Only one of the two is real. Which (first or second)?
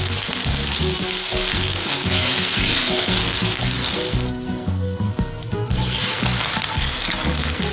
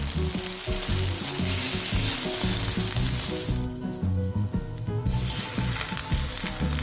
second